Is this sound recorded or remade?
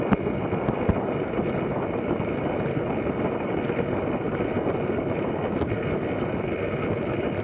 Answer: remade